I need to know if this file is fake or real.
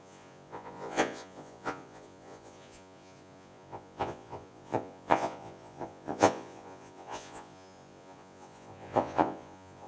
fake